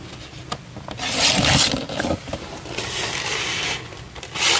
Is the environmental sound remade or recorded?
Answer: recorded